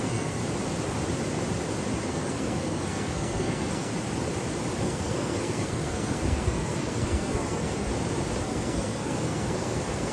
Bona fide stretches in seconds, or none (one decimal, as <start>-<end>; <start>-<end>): 0.4-2.1; 3.9-4.8; 7.9-8.4